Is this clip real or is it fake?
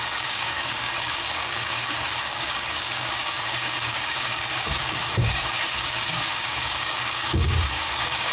fake